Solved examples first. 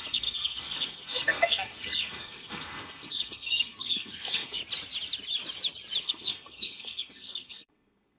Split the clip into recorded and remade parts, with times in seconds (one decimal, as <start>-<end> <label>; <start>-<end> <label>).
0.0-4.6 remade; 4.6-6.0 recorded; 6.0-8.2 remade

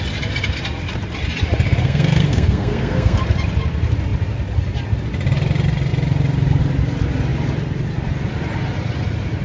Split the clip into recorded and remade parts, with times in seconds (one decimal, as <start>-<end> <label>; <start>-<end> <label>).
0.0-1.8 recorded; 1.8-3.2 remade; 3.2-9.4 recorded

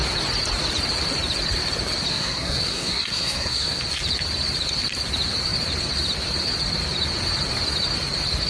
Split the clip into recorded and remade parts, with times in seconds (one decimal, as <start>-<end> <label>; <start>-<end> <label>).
0.0-2.1 recorded; 2.1-3.8 remade; 3.8-8.5 recorded

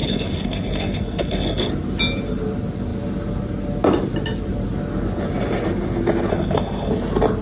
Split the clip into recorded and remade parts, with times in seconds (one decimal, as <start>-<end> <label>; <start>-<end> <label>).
0.0-1.7 remade; 1.7-6.3 recorded; 6.3-6.9 remade; 6.9-7.4 recorded

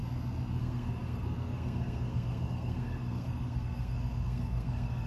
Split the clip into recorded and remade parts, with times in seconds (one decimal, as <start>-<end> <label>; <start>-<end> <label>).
0.0-0.6 recorded; 0.6-5.1 remade